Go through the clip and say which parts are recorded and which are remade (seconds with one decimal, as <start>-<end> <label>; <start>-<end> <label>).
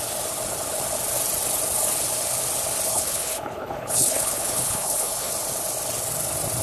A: 0.0-2.9 recorded; 2.9-5.3 remade; 5.3-6.6 recorded